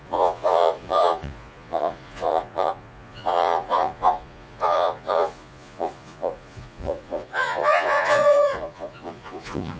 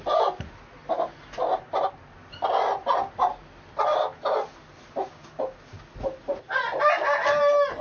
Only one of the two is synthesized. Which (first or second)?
first